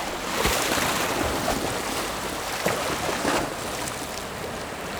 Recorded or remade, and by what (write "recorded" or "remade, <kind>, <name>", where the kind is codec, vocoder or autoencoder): recorded